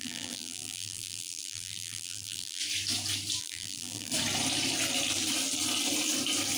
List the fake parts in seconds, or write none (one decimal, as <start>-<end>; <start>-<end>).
0.0-2.6; 3.4-4.1

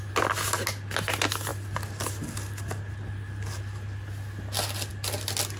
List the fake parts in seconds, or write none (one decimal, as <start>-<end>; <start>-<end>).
none

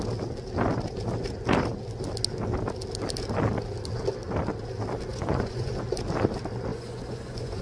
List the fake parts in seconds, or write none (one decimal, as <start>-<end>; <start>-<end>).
5.1-5.7; 6.7-7.6

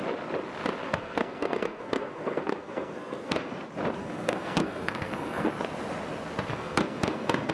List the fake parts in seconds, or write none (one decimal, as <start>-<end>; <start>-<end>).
0.8-3.5; 4.0-5.5; 6.5-7.5